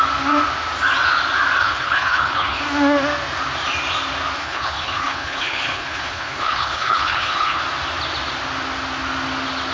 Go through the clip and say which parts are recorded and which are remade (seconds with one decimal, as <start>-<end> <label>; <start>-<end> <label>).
0.0-1.6 recorded; 1.6-2.6 remade; 2.6-4.4 recorded; 4.4-7.6 remade; 7.6-9.7 recorded